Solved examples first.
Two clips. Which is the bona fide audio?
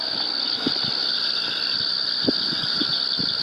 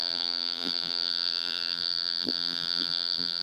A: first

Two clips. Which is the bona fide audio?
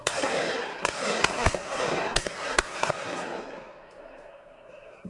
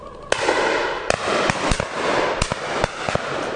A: second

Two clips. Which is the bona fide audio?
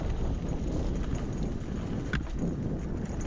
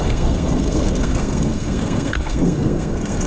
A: first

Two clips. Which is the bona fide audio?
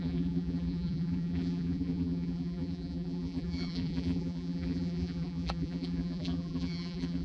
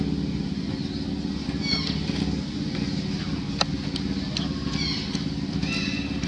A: second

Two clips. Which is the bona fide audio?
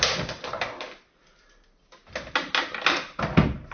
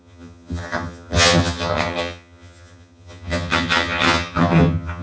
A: first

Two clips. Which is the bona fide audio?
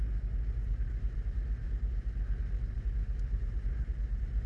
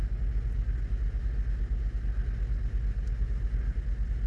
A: second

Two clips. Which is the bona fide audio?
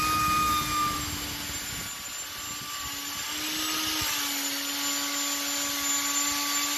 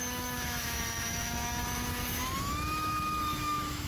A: first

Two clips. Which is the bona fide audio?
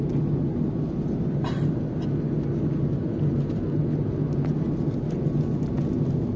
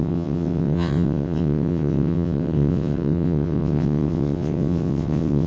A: first